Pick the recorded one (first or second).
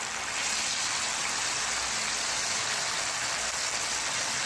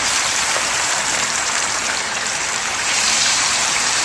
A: first